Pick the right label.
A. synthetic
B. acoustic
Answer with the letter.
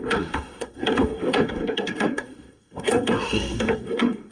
A